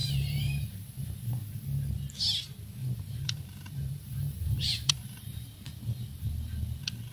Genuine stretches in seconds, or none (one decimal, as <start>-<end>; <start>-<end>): 1.3-2.8; 6.2-7.1